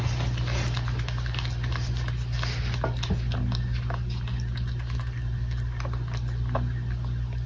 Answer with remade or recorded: recorded